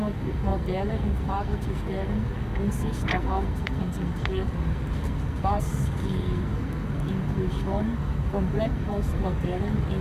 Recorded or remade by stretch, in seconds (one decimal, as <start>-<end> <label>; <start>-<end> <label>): 0.0-10.0 remade